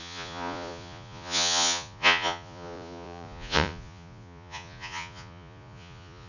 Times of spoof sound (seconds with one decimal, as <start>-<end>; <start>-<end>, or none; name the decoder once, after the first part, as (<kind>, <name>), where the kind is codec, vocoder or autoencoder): 0.0-6.3 (vocoder, Vocos)